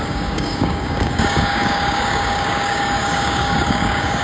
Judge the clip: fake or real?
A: fake